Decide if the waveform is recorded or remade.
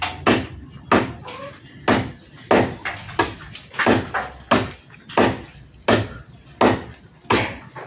recorded